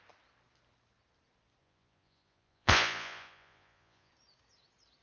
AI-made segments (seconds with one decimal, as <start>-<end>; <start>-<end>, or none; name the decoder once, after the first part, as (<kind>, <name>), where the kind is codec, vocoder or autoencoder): 1.6-4.1 (vocoder, Vocos)